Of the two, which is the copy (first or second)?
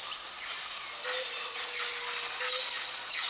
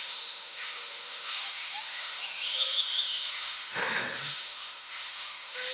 second